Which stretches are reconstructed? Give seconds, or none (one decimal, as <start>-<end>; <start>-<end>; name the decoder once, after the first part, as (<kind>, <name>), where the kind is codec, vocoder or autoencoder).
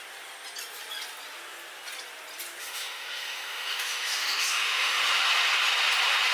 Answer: 2.6-5.0 (autoencoder, DAC-VAE)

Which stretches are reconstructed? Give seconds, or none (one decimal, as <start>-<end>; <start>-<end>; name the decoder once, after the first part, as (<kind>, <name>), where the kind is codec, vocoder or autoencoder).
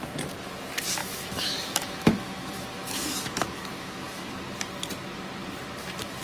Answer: 1.0-4.3 (autoencoder, DAC-VAE)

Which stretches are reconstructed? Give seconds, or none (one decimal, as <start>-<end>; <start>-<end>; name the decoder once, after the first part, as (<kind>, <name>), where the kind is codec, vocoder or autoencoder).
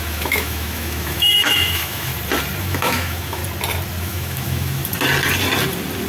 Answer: 0.0-2.1 (autoencoder, DAC-VAE); 2.6-3.4; 4.0-4.8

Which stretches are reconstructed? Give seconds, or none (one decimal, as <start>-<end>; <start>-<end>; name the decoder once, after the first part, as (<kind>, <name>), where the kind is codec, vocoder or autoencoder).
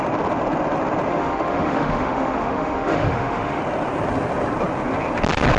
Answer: 1.1-3.6 (autoencoder, DAC-VAE)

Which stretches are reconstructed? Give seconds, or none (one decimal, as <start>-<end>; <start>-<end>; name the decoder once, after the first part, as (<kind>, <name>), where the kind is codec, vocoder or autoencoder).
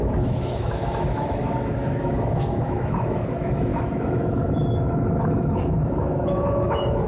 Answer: 0.0-7.1 (autoencoder, DAC-VAE)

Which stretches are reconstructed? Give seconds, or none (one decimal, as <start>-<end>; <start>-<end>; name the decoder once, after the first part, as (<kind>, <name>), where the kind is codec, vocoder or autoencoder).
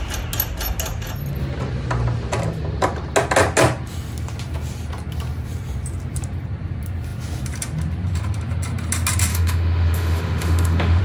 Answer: 9.3-11.0 (autoencoder, DAC-VAE)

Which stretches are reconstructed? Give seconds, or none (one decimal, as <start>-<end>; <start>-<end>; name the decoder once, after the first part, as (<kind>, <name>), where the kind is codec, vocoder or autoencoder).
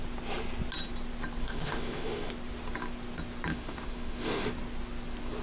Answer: 1.4-2.3 (autoencoder, DAC-VAE); 3.5-4.5